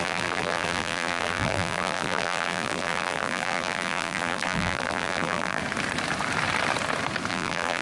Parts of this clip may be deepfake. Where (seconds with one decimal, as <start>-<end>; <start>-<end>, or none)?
0.0-5.6; 7.3-7.8